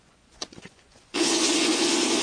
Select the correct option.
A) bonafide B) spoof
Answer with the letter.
B